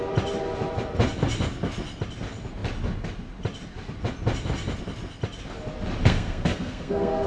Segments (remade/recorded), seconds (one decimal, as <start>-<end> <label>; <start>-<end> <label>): 0.0-6.0 recorded; 6.0-7.3 remade